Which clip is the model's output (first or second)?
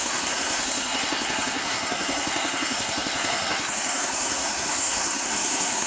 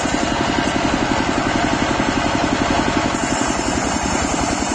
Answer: first